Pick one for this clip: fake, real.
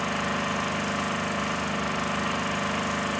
real